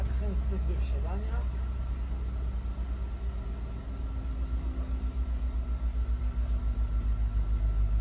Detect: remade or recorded recorded